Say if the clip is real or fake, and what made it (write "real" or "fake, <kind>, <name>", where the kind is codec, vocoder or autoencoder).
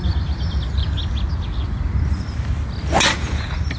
real